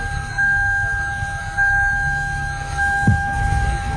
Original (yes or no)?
no